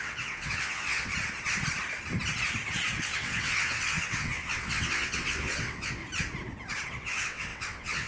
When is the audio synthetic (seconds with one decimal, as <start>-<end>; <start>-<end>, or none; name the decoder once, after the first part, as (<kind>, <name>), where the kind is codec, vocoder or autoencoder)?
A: 0.0-1.1 (vocoder, WaveNeXt); 3.0-6.0; 6.9-8.1